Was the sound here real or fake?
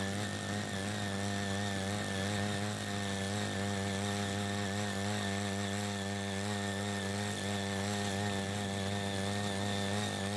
real